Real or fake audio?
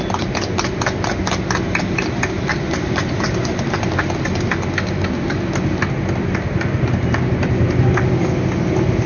real